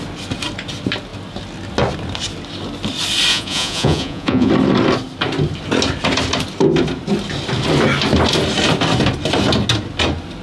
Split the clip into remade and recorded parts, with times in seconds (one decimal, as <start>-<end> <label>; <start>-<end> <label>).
0.0-3.3 recorded; 3.3-4.5 remade; 4.5-10.4 recorded